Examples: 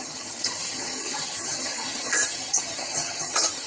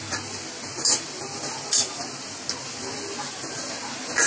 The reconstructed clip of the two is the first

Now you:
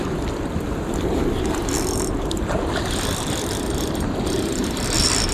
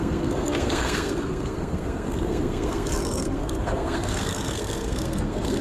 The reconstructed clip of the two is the second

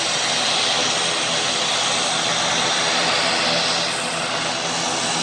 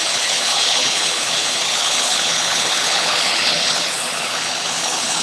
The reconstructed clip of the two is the second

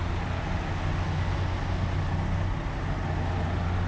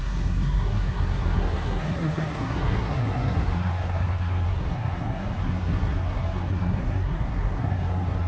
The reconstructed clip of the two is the second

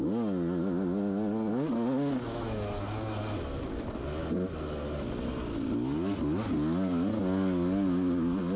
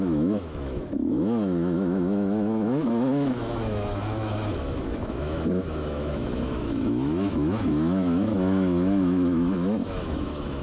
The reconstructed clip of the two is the second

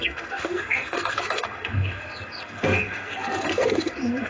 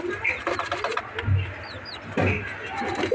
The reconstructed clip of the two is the first